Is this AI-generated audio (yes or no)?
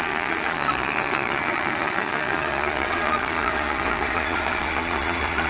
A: yes